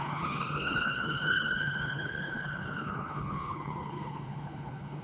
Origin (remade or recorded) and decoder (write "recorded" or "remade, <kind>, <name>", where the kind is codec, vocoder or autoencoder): remade, codec, HILCodec